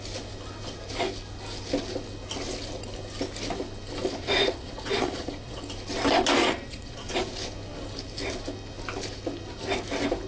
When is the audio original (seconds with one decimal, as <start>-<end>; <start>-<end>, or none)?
0.0-4.2; 5.6-6.4; 7.2-10.3